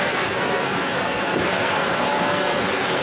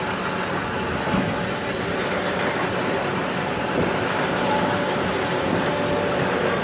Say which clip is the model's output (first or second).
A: first